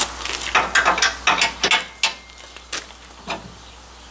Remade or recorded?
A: recorded